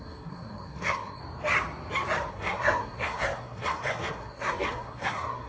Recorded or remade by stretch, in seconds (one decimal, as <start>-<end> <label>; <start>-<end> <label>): 0.0-1.2 remade; 1.2-2.3 recorded; 2.3-5.5 remade